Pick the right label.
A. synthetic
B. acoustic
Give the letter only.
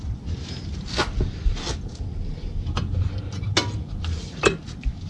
B